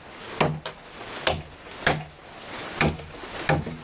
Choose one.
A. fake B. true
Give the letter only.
B